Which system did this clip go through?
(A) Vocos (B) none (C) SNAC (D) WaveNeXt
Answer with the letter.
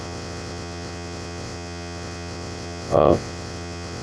D